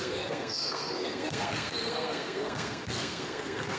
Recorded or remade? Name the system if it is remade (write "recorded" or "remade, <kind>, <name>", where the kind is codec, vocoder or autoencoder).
remade, codec, SNAC